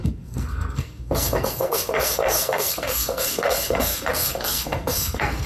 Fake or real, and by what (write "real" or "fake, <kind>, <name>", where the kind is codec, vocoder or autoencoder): fake, codec, SNAC